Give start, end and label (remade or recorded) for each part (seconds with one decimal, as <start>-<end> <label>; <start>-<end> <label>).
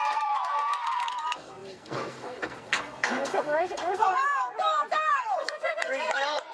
0.0-6.5 remade